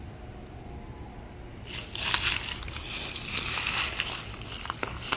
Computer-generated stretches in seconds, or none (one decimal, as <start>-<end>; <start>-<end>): none